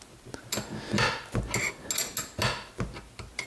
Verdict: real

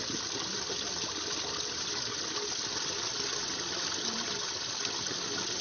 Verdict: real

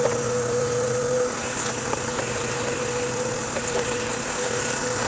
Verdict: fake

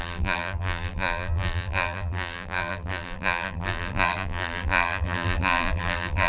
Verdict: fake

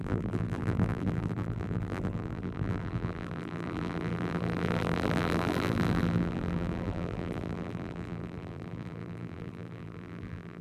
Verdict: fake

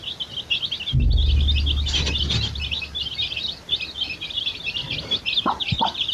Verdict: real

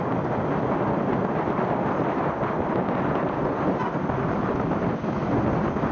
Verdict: real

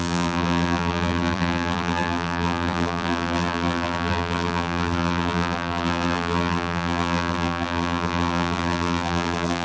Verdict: fake